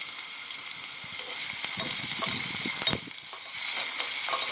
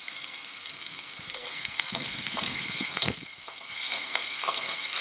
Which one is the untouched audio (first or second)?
first